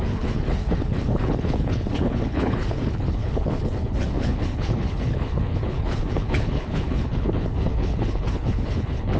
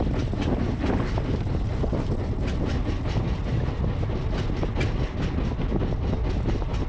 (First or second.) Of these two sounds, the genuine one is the second